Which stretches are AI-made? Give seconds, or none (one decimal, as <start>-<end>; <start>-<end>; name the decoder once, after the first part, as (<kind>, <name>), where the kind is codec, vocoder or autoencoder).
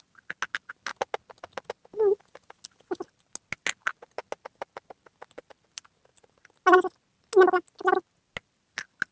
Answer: none